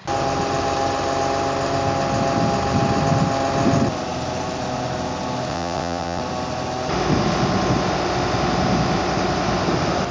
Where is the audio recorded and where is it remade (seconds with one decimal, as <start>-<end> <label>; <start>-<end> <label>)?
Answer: 0.0-5.5 recorded; 5.5-6.2 remade; 6.2-10.1 recorded